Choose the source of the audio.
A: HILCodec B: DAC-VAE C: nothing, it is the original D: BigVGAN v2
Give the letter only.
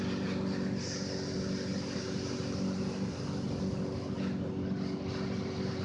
C